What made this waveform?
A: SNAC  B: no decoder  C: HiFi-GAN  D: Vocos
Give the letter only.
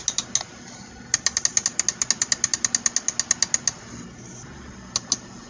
B